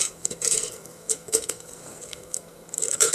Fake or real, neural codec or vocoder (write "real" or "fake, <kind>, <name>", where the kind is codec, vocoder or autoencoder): fake, codec, SNAC